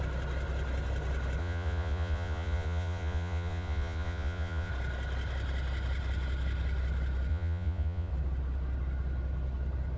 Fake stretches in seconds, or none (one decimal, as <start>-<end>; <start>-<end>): 1.4-4.7; 7.3-8.1